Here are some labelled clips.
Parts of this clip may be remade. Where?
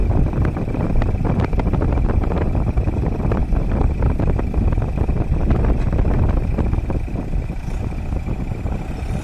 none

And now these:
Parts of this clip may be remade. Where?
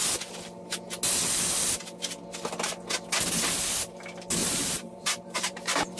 4.4-6.0 (vocoder, BigVGAN v2)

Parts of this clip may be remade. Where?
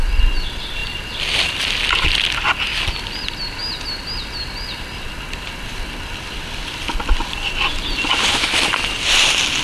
none